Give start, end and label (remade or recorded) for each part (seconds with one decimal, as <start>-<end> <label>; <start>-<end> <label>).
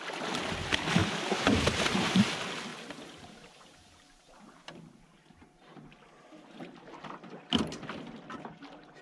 0.0-1.0 recorded; 1.0-2.3 remade; 2.3-2.7 recorded; 2.7-6.9 remade; 6.9-9.0 recorded